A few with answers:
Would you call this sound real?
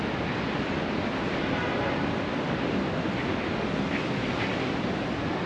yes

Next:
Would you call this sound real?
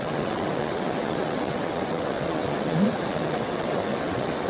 no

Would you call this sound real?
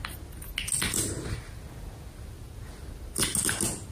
yes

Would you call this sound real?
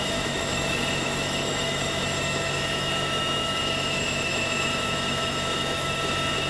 no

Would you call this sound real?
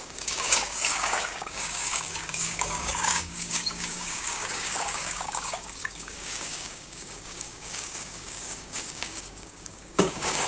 no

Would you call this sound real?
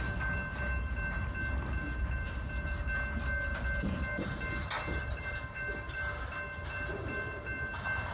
yes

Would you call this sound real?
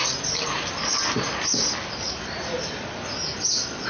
yes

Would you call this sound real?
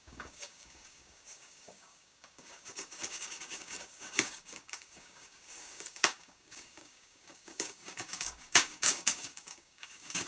no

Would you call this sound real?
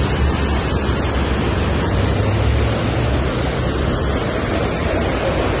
yes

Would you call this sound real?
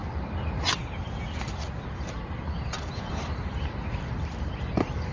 no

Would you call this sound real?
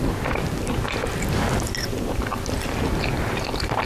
yes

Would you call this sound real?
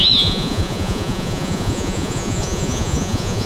no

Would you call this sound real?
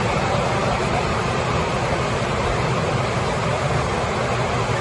no